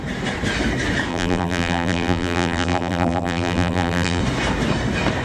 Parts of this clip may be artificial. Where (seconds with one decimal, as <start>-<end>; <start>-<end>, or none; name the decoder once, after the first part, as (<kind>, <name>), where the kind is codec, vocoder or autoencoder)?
1.1-4.2 (vocoder, BigVGAN v2)